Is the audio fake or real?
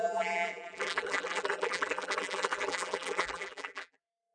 fake